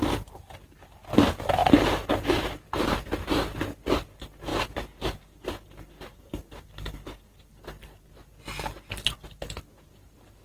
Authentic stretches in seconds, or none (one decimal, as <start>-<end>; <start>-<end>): 0.0-4.5; 5.2-7.5; 8.1-10.4

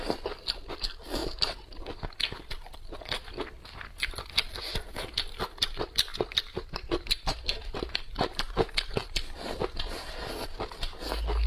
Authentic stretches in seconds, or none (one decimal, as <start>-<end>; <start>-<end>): 0.0-1.2; 2.0-6.1; 8.5-11.5